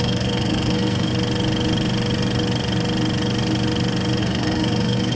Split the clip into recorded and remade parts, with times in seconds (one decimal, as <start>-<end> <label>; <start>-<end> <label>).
0.0-1.1 remade; 1.1-4.2 recorded; 4.2-5.1 remade

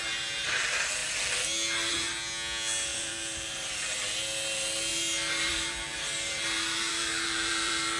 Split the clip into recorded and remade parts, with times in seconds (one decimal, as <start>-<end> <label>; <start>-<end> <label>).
0.0-2.9 recorded; 2.9-3.7 remade; 3.7-4.9 recorded; 4.9-8.0 remade